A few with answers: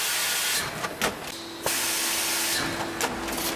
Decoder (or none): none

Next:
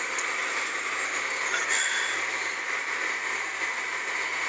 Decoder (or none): none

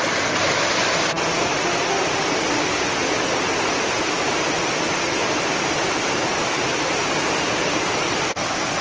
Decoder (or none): none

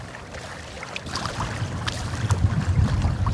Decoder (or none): vocoder, BigVGAN v2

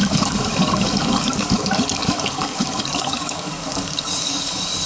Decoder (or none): codec, DAC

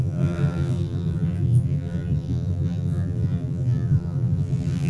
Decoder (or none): vocoder, BigVGAN v2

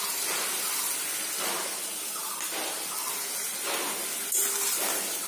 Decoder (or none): none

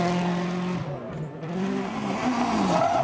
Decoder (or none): none